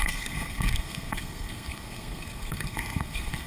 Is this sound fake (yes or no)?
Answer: yes